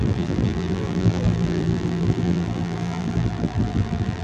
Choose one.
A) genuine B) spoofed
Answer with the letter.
B